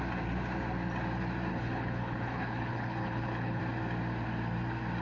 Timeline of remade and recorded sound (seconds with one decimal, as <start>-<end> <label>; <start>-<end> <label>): 0.0-1.5 recorded; 1.5-3.6 remade; 3.6-5.0 recorded